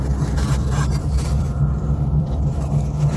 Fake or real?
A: fake